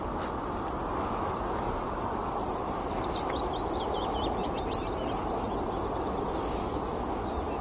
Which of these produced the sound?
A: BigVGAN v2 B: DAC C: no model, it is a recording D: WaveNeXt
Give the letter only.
C